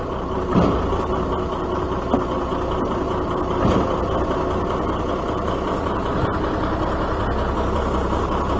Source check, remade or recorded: remade